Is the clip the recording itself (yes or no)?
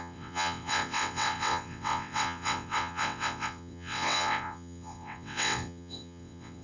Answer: no